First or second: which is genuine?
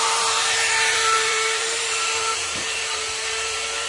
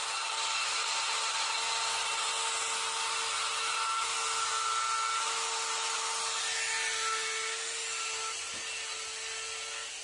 second